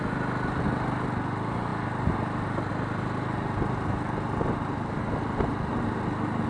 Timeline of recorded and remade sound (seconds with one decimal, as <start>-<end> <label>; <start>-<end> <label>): 0.0-6.5 recorded